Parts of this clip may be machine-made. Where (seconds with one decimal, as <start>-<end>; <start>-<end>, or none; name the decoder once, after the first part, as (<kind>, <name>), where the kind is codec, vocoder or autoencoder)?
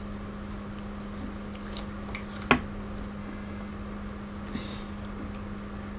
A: 3.2-3.7 (autoencoder, DAC-VAE)